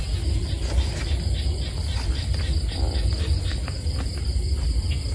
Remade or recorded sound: recorded